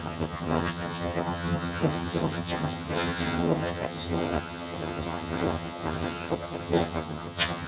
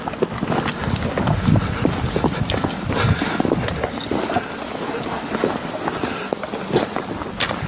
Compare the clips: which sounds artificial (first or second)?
first